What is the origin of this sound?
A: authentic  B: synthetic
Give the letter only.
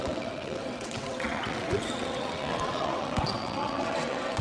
B